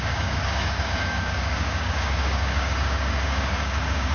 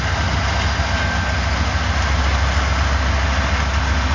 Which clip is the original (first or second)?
second